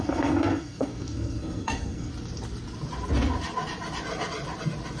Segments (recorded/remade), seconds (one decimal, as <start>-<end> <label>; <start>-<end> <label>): 0.0-2.1 remade; 2.1-5.0 recorded